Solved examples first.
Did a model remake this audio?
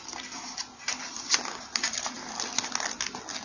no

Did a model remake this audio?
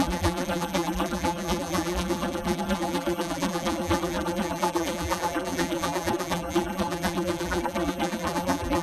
yes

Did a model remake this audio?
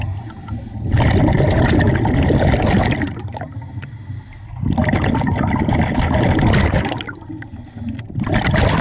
no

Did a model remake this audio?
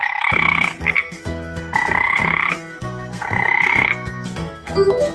yes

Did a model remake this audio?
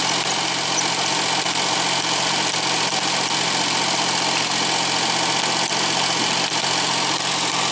yes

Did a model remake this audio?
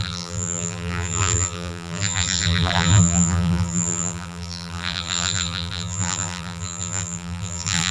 yes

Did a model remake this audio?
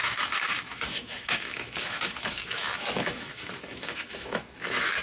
yes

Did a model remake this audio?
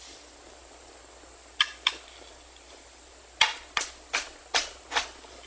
no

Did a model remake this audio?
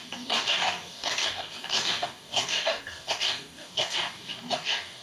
yes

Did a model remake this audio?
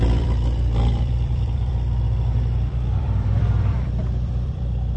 yes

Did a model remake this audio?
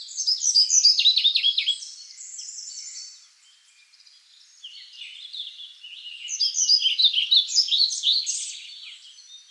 no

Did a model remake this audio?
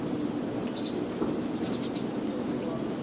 no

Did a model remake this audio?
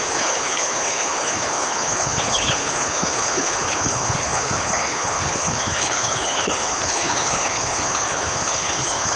yes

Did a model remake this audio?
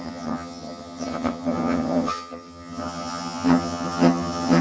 yes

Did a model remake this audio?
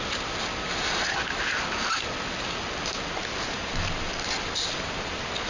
no